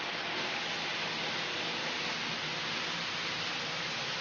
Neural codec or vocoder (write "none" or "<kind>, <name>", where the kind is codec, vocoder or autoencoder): none